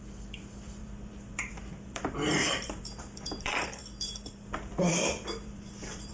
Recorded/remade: remade